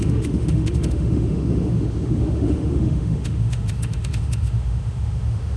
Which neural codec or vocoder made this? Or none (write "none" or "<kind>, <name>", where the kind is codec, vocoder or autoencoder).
autoencoder, DAC-VAE